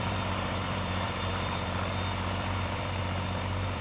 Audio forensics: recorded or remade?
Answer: remade